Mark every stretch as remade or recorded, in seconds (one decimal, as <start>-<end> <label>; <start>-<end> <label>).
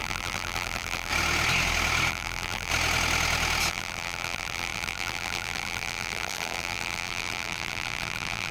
0.0-1.1 remade; 1.1-2.1 recorded; 2.1-2.7 remade; 2.7-3.7 recorded; 3.7-8.5 remade